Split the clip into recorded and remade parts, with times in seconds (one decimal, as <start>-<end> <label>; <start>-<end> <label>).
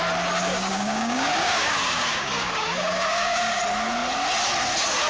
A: 0.0-0.5 recorded; 0.5-3.6 remade; 3.6-5.1 recorded